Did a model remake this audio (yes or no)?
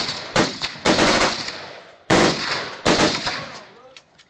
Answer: yes